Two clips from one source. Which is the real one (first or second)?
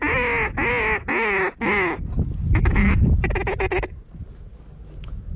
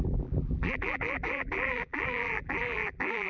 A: first